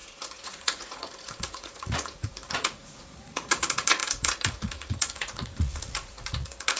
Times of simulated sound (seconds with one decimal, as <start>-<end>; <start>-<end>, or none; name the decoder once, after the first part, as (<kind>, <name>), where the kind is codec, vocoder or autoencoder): 0.0-6.8 (vocoder, Vocos)